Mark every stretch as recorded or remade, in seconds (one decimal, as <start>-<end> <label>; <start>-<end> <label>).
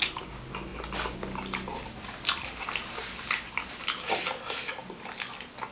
0.0-5.7 recorded